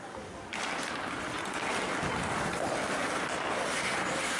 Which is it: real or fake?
real